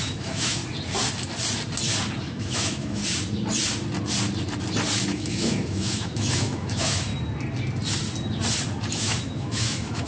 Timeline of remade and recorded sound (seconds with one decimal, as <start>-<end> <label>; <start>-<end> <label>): 0.0-0.6 remade; 0.6-2.2 recorded; 2.2-3.0 remade; 3.0-5.1 recorded; 5.1-7.1 remade; 7.1-8.9 recorded; 8.9-10.1 remade